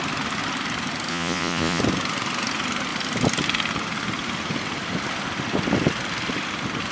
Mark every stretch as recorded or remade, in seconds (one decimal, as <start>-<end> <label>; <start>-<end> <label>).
0.0-1.1 recorded; 1.1-1.8 remade; 1.8-6.9 recorded